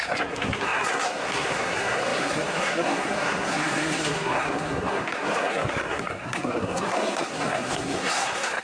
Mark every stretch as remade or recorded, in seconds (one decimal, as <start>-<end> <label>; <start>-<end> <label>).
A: 0.0-8.6 remade